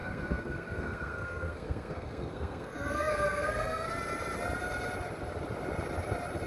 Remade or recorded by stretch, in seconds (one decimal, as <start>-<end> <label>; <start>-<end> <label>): 0.0-3.9 remade; 3.9-6.5 recorded